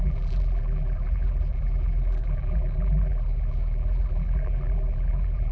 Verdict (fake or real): fake